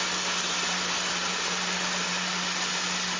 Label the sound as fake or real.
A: real